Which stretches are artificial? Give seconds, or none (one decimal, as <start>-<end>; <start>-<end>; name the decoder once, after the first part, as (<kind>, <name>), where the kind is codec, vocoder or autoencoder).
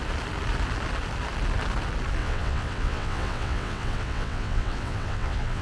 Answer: 2.2-5.6 (vocoder, WaveNeXt)